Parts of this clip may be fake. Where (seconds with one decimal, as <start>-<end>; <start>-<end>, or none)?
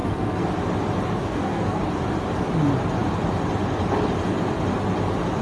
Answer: 0.0-0.5; 1.2-1.8